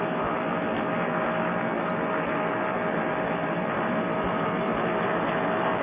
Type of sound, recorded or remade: remade